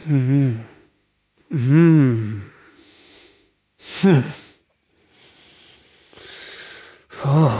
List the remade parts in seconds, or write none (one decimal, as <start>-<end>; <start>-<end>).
0.0-4.6